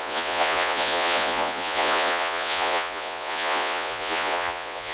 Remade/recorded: remade